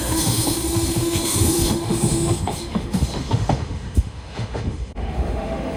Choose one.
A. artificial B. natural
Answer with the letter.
A